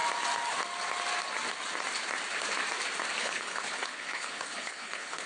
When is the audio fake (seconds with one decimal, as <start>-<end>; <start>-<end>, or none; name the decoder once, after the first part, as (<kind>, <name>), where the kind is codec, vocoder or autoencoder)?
3.2-5.3 (codec, HILCodec)